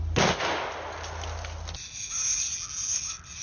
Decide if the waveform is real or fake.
real